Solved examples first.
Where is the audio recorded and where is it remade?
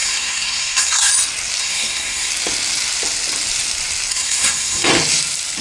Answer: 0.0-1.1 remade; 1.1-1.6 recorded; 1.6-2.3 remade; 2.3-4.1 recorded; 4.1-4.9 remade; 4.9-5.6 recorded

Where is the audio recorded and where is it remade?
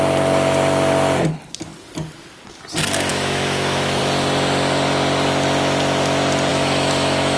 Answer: 0.0-3.1 recorded; 3.1-4.0 remade; 4.0-6.5 recorded; 6.5-7.4 remade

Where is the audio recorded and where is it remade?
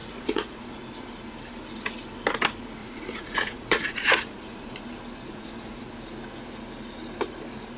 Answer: 0.0-0.8 remade; 0.8-2.8 recorded; 2.8-4.8 remade; 4.8-5.3 recorded; 5.3-5.9 remade; 5.9-7.8 recorded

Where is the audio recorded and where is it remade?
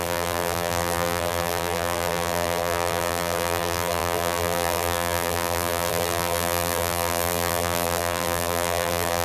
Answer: 0.0-9.2 remade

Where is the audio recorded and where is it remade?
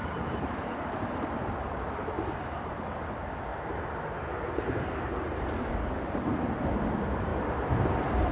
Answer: 0.0-2.7 remade; 2.7-3.5 recorded; 3.5-6.7 remade; 6.7-7.3 recorded; 7.3-8.3 remade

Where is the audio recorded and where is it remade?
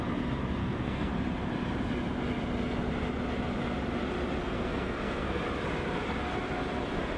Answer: 0.0-0.6 recorded; 0.6-1.1 remade; 1.1-4.4 recorded; 4.4-5.4 remade; 5.4-7.2 recorded